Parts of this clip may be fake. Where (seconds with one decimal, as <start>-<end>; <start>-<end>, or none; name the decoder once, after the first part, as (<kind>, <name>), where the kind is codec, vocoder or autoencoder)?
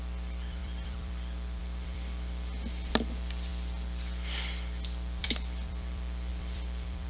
0.0-3.5 (vocoder, BigVGAN v2); 5.2-7.1